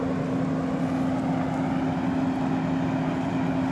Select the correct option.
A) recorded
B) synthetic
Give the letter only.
A